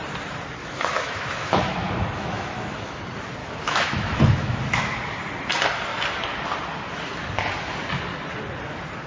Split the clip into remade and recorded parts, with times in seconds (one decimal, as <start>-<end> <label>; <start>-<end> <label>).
0.0-0.6 recorded; 0.6-3.0 remade; 3.0-3.4 recorded; 3.4-5.0 remade; 5.0-9.1 recorded